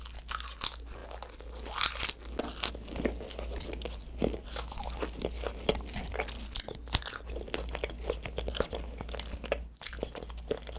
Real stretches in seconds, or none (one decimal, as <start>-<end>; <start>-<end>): 0.0-10.8

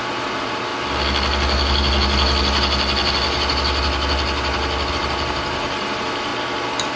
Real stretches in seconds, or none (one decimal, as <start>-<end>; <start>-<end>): 0.7-4.9; 6.3-7.0

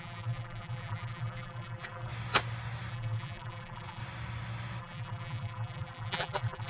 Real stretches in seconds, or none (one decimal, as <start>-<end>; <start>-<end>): 2.1-2.9; 4.0-4.8

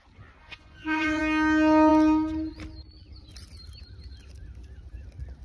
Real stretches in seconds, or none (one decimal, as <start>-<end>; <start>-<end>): 0.0-0.4; 1.2-5.4

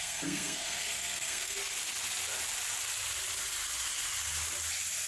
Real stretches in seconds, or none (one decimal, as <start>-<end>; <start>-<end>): 1.6-5.1